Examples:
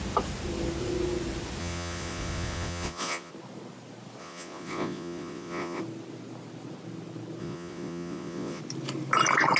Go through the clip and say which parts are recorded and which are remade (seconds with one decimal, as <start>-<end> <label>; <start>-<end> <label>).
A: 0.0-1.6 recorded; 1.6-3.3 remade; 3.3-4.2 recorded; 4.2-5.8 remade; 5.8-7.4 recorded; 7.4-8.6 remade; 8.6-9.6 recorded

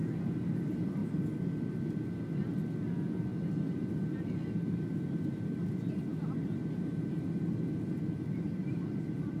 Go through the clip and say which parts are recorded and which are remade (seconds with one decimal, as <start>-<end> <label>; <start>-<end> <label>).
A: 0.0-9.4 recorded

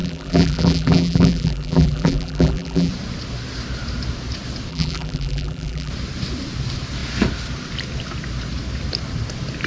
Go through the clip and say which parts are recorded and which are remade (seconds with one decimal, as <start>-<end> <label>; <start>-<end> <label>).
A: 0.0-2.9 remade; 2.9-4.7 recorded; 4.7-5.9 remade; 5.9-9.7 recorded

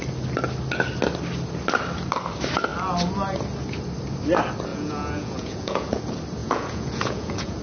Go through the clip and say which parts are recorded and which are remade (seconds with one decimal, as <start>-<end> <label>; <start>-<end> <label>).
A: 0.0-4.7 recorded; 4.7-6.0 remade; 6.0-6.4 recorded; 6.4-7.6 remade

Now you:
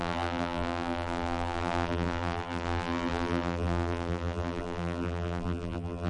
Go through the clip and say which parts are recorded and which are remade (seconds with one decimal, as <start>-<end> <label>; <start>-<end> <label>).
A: 0.0-6.1 remade

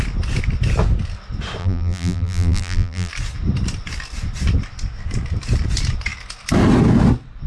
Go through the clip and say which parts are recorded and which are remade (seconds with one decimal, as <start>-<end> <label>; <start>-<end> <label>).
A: 0.0-1.6 recorded; 1.6-3.1 remade; 3.1-7.5 recorded